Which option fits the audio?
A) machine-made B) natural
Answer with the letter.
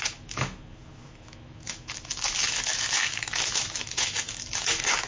A